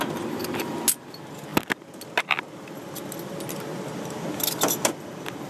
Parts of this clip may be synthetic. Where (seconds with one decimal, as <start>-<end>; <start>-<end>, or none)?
none

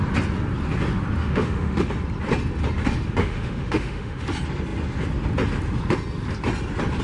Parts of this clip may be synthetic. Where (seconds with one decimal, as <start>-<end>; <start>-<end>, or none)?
1.2-1.9; 3.2-4.3

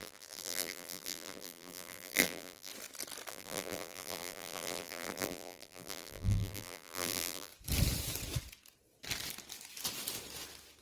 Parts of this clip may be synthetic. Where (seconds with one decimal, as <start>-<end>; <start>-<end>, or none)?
0.0-2.7; 3.3-7.5

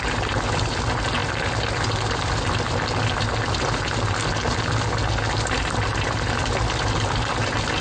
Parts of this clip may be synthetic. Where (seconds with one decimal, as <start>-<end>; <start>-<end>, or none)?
none